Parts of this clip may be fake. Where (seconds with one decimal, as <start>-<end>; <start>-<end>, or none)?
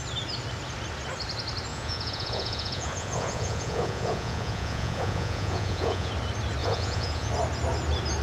1.7-6.1; 6.6-7.3